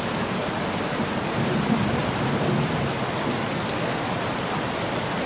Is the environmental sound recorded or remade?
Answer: recorded